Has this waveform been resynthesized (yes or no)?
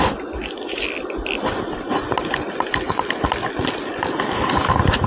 no